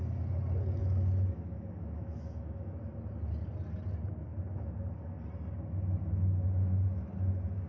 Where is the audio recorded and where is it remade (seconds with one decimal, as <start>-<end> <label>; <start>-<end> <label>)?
0.0-0.8 recorded; 0.8-2.8 remade; 2.8-7.7 recorded